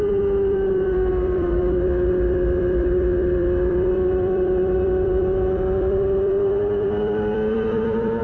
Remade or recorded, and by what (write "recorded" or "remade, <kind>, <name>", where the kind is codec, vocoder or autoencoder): remade, vocoder, BigVGAN v2